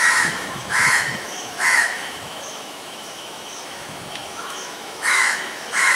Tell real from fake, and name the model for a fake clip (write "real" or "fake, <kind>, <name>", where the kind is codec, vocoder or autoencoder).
fake, autoencoder, DAC-VAE